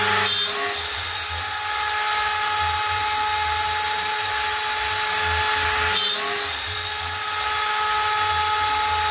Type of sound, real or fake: real